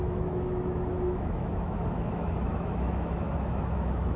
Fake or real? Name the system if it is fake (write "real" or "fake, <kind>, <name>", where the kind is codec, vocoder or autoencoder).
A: fake, autoencoder, DAC-VAE